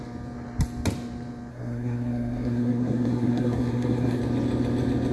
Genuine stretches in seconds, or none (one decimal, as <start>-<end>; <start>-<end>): 0.0-1.5; 4.2-5.1